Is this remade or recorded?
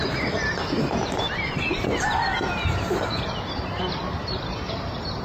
recorded